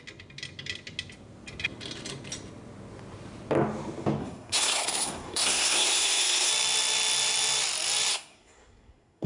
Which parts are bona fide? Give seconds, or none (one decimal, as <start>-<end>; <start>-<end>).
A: 0.0-4.2; 6.5-8.1